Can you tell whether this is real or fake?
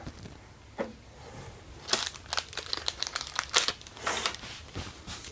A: real